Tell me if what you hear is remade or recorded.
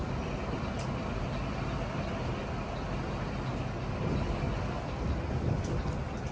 recorded